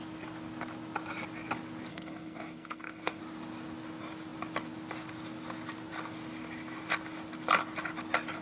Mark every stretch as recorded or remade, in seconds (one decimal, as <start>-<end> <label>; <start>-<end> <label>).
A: 0.0-1.9 recorded; 1.9-3.2 remade; 3.2-8.4 recorded